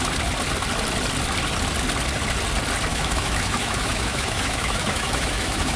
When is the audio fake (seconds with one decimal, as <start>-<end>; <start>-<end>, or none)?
2.9-5.8

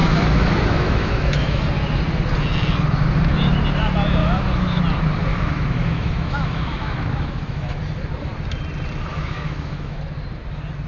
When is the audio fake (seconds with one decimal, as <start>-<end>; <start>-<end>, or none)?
0.0-1.6; 4.2-4.8; 5.3-7.8; 9.1-10.0